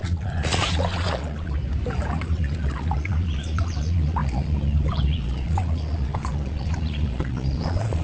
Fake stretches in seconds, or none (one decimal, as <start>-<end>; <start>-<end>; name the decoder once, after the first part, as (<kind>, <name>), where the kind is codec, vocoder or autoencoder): 0.0-1.6 (vocoder, Vocos); 2.1-8.0